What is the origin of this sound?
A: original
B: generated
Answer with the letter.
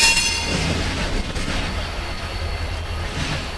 A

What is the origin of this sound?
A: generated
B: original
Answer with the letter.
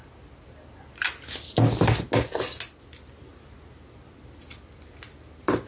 B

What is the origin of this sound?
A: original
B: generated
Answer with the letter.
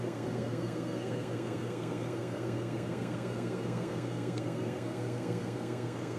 B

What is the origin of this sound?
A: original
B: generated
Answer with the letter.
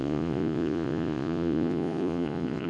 B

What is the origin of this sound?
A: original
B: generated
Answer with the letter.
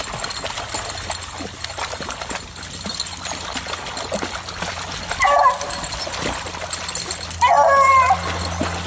A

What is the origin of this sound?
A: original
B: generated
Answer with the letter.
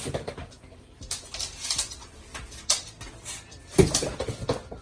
A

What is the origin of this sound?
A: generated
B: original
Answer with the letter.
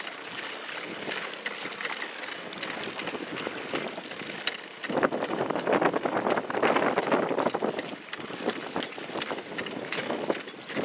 B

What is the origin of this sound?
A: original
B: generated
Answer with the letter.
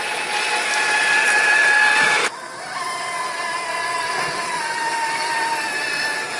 A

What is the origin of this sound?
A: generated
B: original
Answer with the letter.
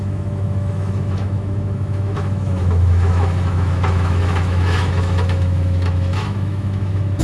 A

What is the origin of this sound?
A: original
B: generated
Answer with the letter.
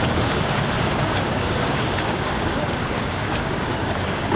B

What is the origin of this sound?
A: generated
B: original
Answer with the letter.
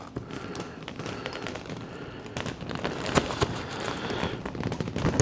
B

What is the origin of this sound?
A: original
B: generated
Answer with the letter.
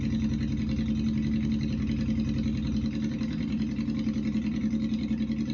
A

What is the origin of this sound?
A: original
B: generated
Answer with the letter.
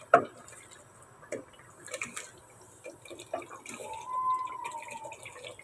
A